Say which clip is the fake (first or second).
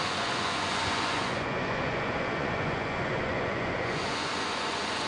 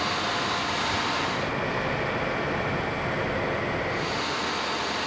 first